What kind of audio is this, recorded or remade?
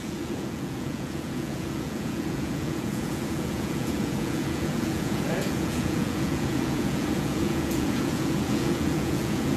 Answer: remade